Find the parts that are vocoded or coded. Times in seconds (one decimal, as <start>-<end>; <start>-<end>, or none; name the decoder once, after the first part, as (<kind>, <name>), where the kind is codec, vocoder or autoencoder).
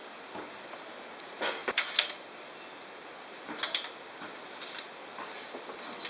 0.8-1.6 (vocoder, BigVGAN v2); 3.3-4.3